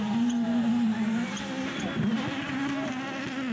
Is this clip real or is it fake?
real